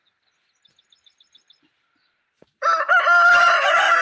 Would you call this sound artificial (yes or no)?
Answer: no